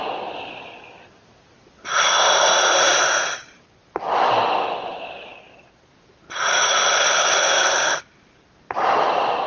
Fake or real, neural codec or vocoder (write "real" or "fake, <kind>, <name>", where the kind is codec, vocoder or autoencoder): real